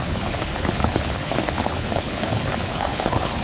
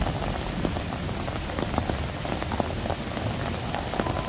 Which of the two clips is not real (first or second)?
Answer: first